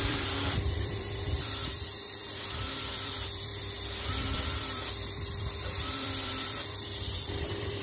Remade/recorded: remade